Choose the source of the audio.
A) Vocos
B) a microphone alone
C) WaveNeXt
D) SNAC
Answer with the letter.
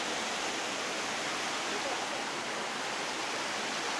B